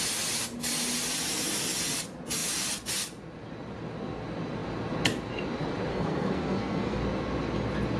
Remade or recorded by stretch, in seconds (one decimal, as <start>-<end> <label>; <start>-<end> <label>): 0.0-5.9 recorded; 5.9-7.0 remade; 7.0-8.0 recorded